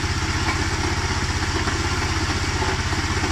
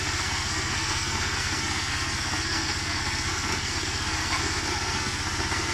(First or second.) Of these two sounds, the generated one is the second